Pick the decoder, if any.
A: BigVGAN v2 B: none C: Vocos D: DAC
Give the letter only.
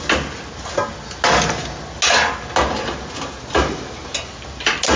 B